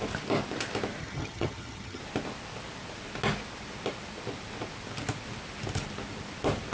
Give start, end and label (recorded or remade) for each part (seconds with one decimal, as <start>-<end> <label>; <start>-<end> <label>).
0.0-1.0 recorded; 1.0-2.0 remade; 2.0-6.7 recorded